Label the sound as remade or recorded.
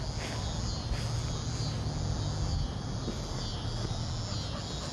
recorded